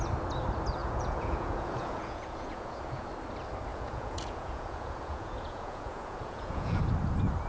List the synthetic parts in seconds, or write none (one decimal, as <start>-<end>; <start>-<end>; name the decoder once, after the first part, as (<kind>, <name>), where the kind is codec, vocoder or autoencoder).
0.8-3.1 (vocoder, Vocos); 3.7-6.8

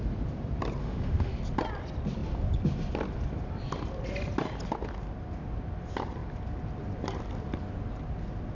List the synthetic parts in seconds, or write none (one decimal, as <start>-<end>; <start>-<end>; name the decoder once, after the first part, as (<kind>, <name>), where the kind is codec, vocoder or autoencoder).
0.8-1.3 (autoencoder, DAC-VAE)